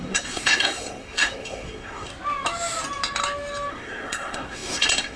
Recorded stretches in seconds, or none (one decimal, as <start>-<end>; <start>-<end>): 2.1-3.7

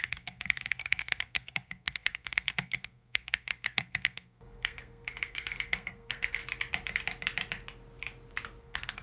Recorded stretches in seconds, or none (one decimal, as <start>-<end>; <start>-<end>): 6.4-8.6